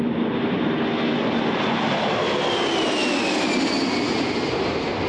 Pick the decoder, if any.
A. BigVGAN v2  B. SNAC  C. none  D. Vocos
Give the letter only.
C